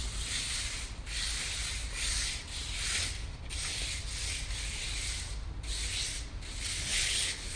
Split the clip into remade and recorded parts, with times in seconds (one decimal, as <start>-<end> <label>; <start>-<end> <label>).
0.0-6.9 recorded; 6.9-7.6 remade